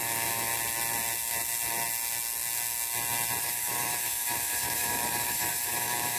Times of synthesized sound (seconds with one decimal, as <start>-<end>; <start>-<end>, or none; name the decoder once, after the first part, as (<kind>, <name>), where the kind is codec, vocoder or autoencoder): 0.0-0.5 (autoencoder, DAC-VAE); 3.4-6.2